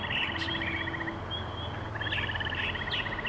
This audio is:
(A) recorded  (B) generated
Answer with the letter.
A